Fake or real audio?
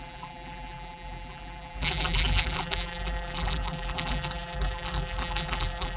fake